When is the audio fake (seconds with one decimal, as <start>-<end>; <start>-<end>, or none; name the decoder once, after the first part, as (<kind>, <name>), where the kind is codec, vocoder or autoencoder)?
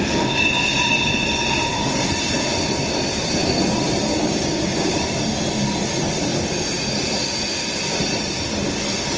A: 4.1-5.0 (codec, DAC)